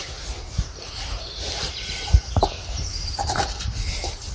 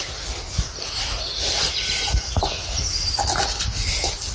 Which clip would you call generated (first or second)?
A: first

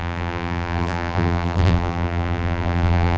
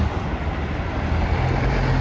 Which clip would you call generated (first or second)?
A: first